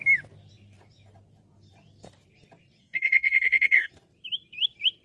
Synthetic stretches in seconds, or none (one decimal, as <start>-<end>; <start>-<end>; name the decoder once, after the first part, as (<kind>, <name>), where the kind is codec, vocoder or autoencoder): 2.8-3.9 (codec, SNAC)